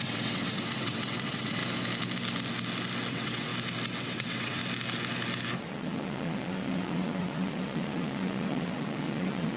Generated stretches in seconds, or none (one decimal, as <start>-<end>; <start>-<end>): 0.0-1.6; 3.1-3.5; 4.0-4.6; 5.6-9.6